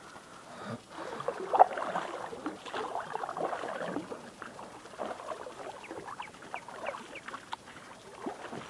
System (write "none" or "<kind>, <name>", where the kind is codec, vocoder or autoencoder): none